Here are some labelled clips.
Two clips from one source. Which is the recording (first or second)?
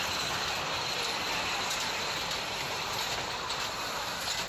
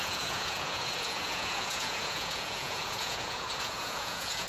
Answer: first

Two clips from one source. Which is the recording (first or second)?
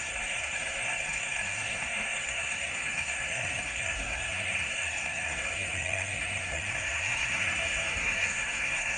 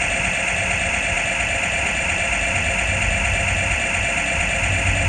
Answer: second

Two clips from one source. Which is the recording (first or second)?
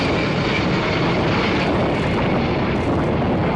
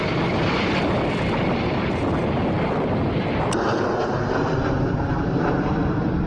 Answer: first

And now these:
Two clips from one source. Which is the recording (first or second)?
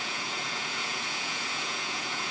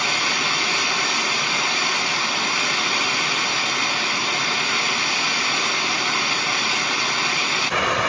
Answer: second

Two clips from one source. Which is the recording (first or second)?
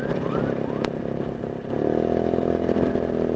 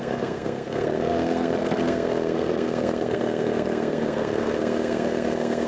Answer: first